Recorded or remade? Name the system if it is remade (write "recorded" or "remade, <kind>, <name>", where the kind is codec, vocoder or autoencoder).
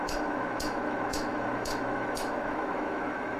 remade, autoencoder, DAC-VAE